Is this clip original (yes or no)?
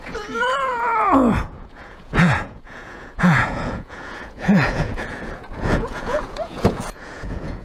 no